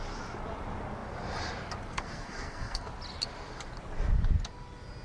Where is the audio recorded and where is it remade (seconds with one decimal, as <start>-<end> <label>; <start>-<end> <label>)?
0.0-1.9 recorded; 1.9-2.9 remade; 2.9-5.0 recorded